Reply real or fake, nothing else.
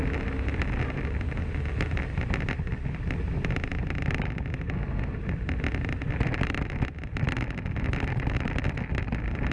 real